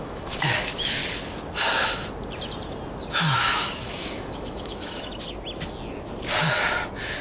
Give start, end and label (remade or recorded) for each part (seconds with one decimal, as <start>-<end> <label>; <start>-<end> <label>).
0.0-1.0 remade; 1.0-3.1 recorded; 3.1-5.1 remade; 5.1-7.2 recorded